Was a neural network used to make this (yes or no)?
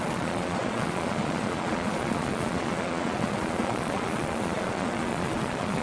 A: yes